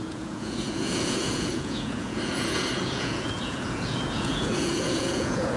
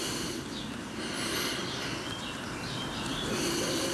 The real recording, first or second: second